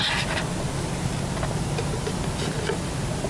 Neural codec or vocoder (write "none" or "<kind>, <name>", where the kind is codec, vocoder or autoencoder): none